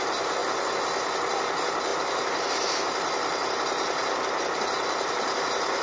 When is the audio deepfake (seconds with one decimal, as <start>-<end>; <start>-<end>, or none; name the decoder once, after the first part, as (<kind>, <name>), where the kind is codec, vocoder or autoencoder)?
none